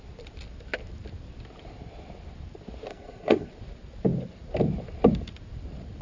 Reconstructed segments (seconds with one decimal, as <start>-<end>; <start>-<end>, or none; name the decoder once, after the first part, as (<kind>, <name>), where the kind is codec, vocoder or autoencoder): 2.9-3.5 (codec, SNAC)